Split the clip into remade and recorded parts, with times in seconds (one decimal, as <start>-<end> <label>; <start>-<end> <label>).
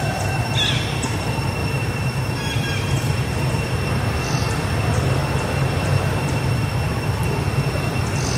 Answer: 0.0-1.6 recorded; 1.6-4.2 remade; 4.2-8.4 recorded